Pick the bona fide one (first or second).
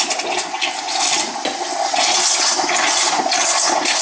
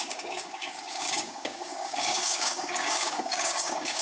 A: first